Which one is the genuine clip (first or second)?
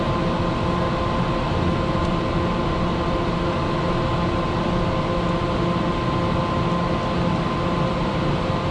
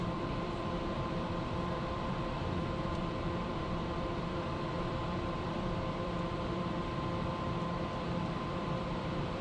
first